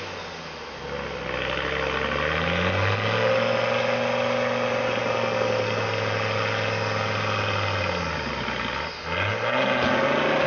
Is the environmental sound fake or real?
real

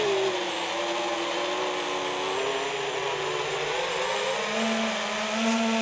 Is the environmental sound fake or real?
real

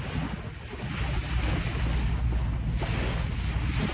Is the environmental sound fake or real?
real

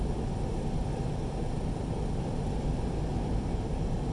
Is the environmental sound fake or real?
real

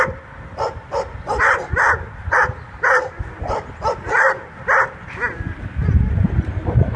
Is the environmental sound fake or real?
real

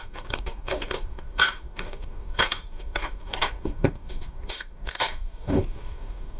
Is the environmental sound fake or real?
fake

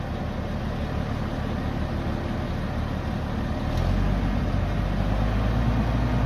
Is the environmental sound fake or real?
real